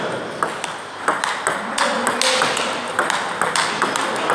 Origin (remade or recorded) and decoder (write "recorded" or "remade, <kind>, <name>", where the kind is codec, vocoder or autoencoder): recorded